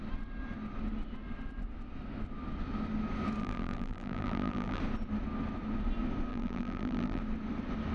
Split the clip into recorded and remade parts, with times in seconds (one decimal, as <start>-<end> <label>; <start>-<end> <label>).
0.0-3.4 recorded; 3.4-4.8 remade; 4.8-6.3 recorded; 6.3-7.2 remade; 7.2-7.9 recorded